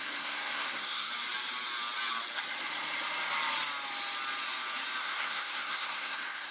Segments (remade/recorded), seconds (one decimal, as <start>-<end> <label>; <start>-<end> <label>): 0.0-1.1 remade; 1.1-5.0 recorded; 5.0-6.5 remade